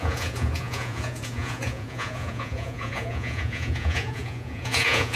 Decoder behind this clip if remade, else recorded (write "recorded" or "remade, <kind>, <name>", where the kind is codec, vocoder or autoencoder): remade, vocoder, Vocos